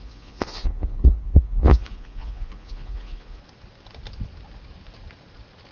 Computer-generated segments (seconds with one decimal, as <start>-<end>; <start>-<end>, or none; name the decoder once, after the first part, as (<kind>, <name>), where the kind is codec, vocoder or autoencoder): 0.0-3.4 (vocoder, Vocos)